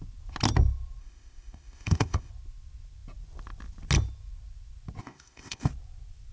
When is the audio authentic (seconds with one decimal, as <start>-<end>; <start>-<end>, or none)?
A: 0.0-1.0; 2.3-5.0; 5.7-6.3